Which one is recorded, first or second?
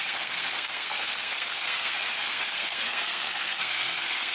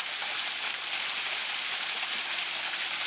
second